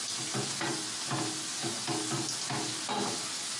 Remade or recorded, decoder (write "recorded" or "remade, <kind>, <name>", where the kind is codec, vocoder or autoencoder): recorded